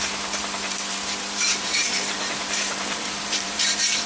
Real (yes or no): no